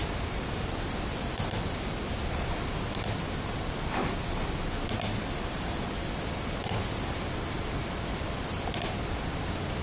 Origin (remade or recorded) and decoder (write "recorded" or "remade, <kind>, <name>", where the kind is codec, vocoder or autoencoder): recorded